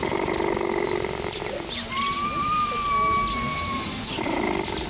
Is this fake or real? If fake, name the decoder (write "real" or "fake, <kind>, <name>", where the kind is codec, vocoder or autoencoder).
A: real